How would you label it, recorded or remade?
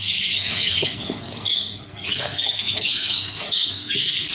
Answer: remade